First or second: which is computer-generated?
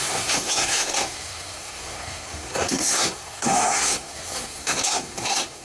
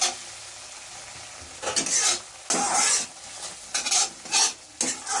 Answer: first